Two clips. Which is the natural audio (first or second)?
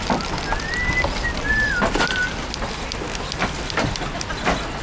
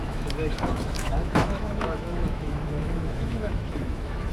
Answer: first